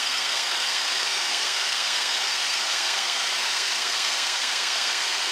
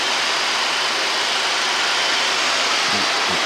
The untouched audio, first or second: second